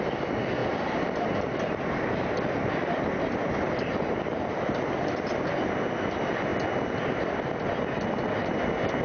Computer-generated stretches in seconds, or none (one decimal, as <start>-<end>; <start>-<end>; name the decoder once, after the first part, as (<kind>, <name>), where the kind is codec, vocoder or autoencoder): 0.6-4.3 (vocoder, BigVGAN v2)